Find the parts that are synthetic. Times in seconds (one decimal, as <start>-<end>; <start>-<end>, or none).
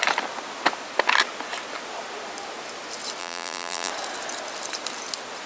3.2-3.9